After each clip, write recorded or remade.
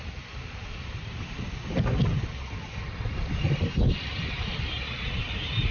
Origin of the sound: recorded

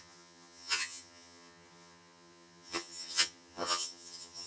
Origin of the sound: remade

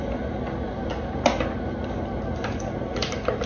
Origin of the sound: recorded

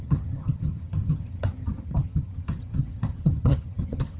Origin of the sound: remade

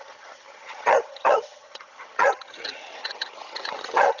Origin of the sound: remade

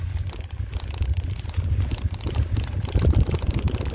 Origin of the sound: recorded